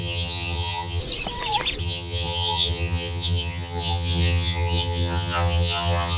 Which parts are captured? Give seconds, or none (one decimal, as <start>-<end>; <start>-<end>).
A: 1.0-1.8